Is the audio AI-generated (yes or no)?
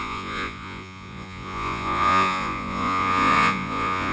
yes